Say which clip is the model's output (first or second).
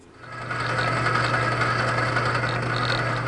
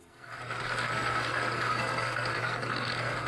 second